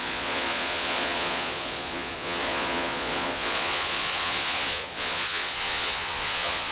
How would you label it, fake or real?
fake